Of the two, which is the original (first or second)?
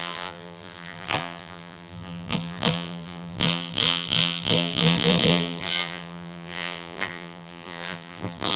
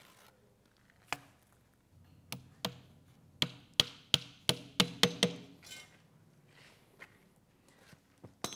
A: second